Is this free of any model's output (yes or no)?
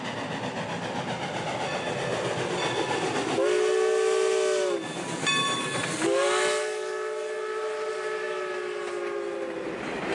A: yes